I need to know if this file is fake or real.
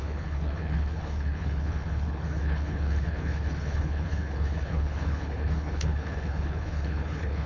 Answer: fake